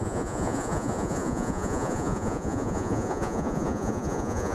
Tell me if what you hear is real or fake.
fake